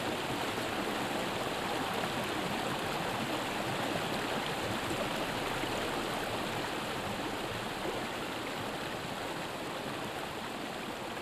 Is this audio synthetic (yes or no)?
no